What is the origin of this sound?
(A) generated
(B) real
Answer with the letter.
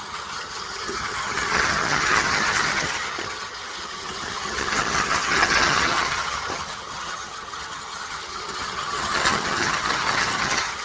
A